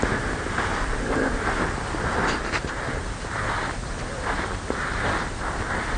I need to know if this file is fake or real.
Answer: real